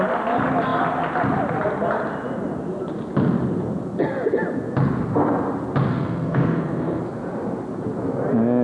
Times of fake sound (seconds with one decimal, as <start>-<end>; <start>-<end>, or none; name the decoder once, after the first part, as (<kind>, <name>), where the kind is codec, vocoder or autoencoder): 5.9-7.0 (codec, SNAC)